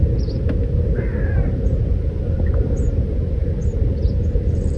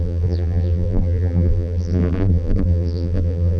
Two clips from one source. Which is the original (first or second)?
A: first